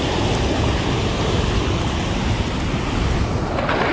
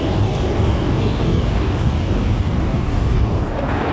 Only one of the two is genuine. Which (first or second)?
first